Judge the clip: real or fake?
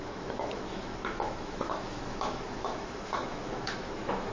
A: fake